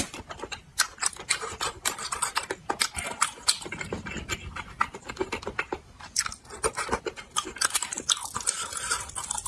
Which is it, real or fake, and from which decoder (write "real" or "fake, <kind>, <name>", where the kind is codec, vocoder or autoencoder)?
real